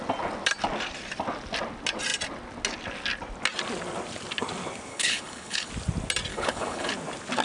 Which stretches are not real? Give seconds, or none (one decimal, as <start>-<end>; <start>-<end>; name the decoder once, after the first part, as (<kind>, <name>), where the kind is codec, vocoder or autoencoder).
4.9-5.7 (codec, HILCodec); 6.3-6.9